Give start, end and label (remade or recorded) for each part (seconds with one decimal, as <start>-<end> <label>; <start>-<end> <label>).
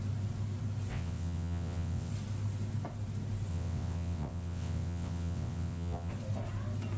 0.0-0.9 recorded; 0.9-2.1 remade; 2.1-3.5 recorded; 3.5-6.1 remade; 6.1-7.0 recorded